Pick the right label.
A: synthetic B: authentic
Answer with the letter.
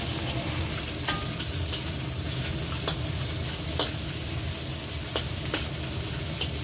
B